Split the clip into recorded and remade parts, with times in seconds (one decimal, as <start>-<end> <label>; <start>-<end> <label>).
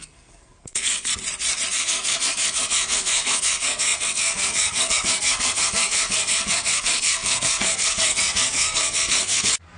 0.0-1.1 remade; 1.1-1.7 recorded; 1.7-9.8 remade